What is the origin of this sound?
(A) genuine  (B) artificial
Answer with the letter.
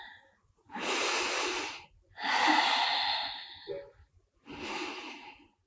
A